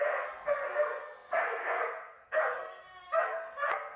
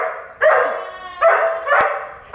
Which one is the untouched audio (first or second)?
second